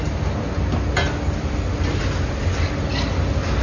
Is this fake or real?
real